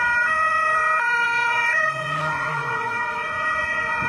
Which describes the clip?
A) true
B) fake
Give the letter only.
B